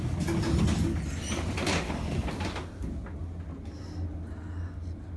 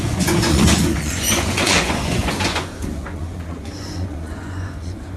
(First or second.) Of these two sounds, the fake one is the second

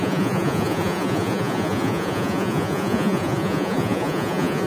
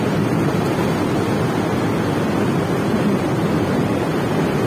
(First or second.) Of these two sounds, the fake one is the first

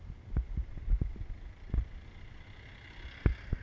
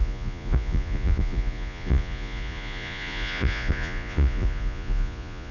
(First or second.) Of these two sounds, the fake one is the second